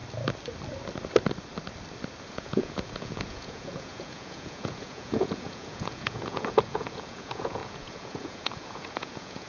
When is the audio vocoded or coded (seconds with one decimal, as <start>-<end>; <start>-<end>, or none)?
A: 2.2-9.5